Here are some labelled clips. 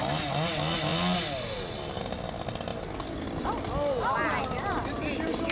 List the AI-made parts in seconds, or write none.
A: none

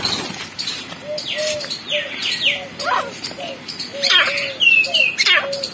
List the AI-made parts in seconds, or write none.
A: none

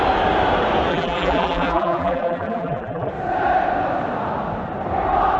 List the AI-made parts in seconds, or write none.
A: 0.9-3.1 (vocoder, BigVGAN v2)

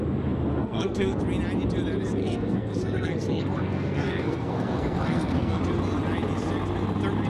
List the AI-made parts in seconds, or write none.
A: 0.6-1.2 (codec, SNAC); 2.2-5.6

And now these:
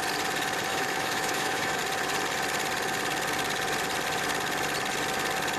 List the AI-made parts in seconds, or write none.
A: 0.7-1.8 (autoencoder, DAC-VAE)

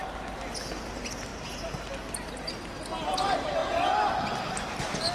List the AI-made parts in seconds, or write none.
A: none

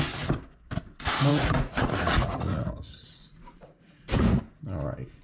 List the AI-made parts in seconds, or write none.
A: 1.3-4.4 (vocoder, Vocos)

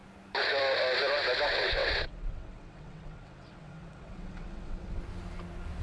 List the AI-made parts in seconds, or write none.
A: 1.5-5.0 (vocoder, WaveNeXt)